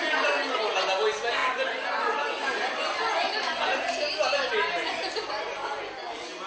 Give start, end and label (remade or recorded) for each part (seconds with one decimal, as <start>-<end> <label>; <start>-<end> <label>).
0.0-6.5 recorded